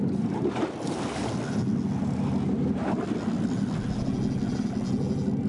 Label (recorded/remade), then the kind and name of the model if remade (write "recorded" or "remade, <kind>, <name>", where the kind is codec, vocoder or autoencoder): recorded